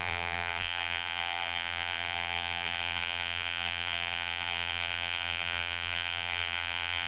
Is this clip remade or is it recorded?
remade